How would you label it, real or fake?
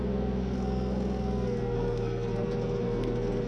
fake